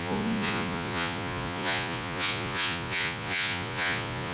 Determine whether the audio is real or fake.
fake